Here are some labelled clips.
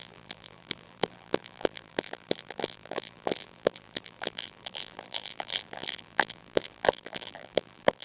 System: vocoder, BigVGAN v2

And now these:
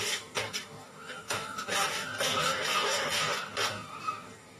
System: codec, DAC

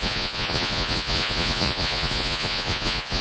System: vocoder, Vocos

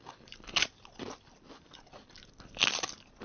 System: none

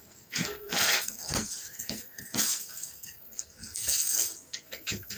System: codec, SNAC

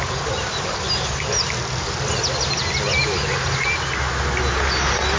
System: none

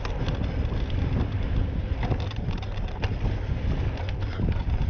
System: none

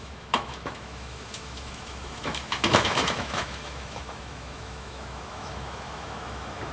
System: autoencoder, DAC-VAE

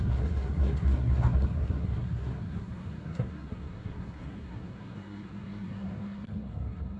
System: codec, SNAC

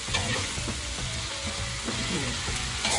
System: vocoder, Vocos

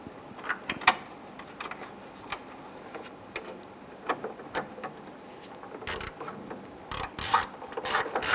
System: none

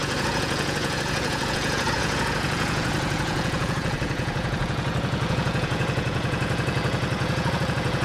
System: vocoder, Vocos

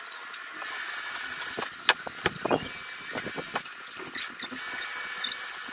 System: none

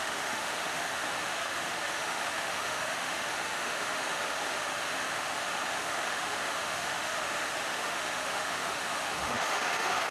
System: autoencoder, DAC-VAE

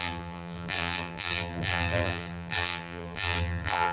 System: vocoder, BigVGAN v2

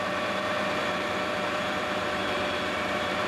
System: vocoder, BigVGAN v2